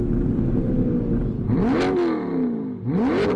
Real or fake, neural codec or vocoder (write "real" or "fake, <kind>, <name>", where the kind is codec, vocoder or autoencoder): real